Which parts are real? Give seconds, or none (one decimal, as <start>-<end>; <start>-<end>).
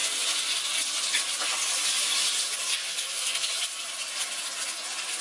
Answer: 0.0-2.9; 3.5-5.2